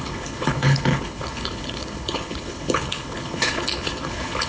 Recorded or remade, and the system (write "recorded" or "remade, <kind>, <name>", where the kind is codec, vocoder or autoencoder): remade, codec, HILCodec